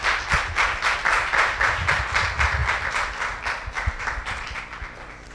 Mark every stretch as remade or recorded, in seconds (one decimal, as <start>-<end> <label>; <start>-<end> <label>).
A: 0.0-1.0 recorded; 1.0-2.2 remade; 2.2-2.6 recorded; 2.6-4.6 remade; 4.6-5.3 recorded